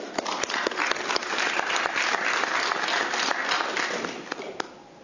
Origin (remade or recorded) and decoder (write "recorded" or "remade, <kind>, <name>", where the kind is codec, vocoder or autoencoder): recorded